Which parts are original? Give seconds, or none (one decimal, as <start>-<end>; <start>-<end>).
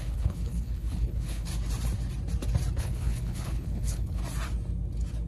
1.5-2.8; 4.2-5.3